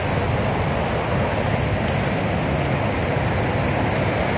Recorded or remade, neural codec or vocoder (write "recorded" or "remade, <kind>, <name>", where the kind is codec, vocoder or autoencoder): recorded